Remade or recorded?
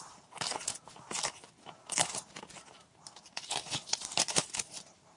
remade